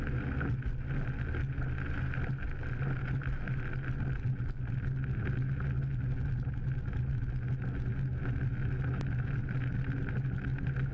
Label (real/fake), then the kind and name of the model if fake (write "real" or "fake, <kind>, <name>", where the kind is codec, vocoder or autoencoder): real